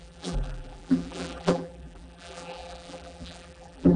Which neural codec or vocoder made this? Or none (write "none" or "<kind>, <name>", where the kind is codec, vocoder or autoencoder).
vocoder, BigVGAN v2